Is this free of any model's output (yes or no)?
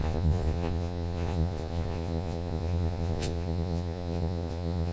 no